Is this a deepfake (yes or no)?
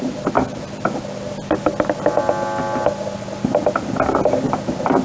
no